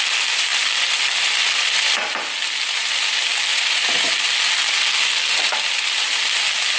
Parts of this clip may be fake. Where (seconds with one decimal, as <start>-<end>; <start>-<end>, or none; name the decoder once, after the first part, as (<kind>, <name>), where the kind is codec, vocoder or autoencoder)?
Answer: 3.5-4.1 (vocoder, Vocos)